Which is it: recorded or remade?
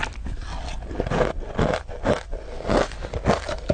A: recorded